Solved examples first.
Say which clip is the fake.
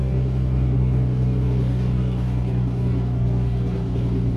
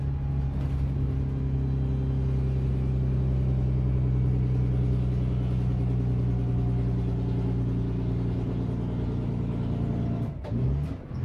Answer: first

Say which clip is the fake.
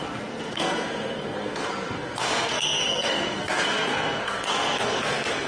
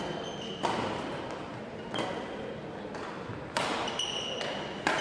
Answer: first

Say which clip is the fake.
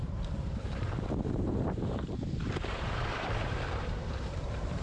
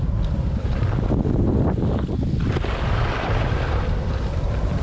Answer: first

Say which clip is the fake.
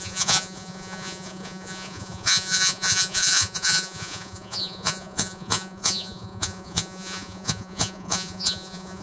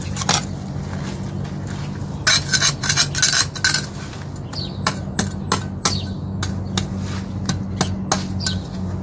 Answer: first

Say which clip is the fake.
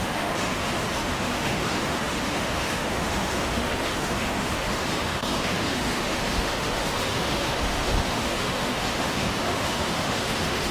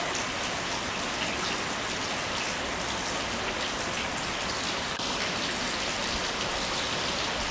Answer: first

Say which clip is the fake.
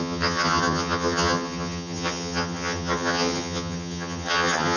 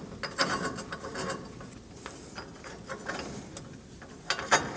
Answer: first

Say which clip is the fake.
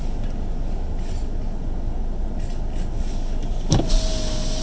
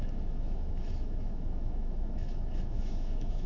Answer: second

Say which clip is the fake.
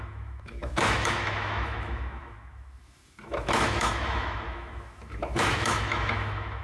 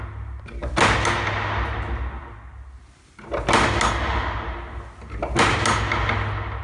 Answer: first